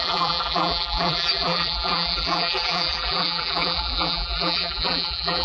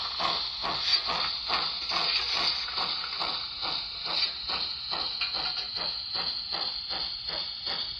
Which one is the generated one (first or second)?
first